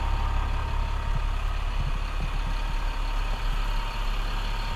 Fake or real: real